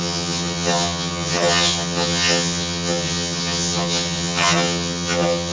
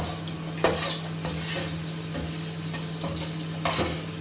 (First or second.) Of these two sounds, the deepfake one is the first